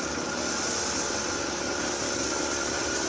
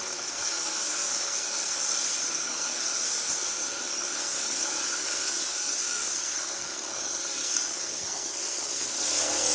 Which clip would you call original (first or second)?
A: first